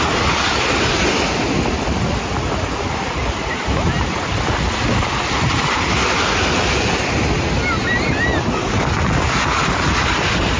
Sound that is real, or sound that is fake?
real